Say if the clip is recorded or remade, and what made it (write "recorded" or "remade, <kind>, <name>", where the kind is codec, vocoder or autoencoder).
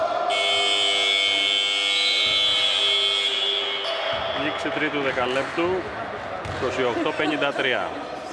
recorded